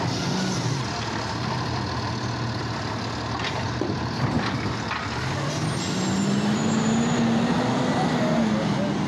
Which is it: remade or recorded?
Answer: recorded